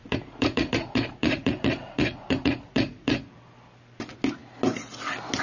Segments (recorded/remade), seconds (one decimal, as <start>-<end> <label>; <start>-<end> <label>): 0.0-3.2 remade; 3.2-5.4 recorded